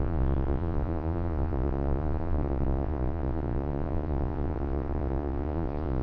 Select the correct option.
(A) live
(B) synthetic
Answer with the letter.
B